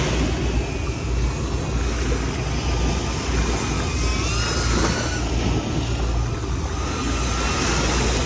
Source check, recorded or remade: recorded